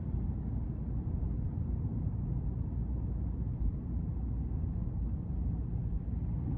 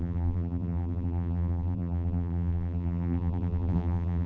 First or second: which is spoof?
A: second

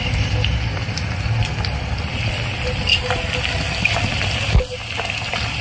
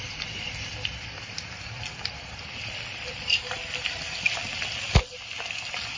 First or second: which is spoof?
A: second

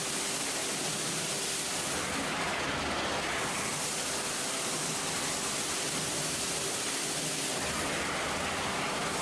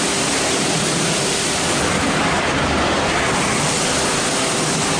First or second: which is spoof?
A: second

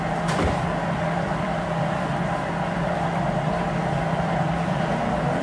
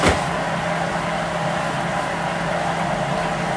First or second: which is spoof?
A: first